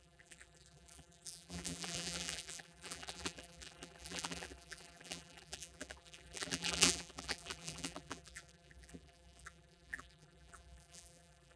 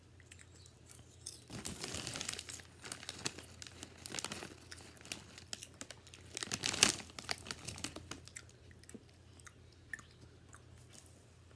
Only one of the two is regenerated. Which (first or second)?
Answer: first